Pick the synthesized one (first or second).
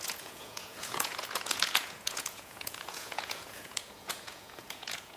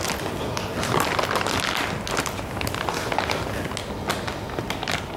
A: first